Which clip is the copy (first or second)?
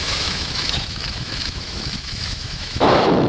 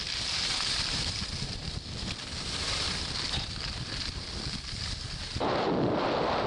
first